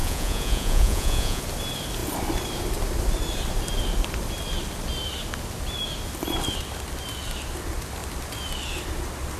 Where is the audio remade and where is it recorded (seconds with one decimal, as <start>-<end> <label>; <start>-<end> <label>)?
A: 0.0-1.4 remade; 1.4-9.4 recorded